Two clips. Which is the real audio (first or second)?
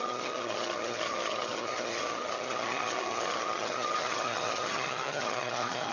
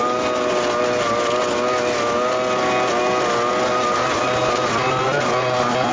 second